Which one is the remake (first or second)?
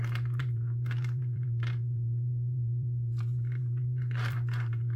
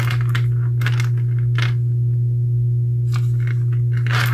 first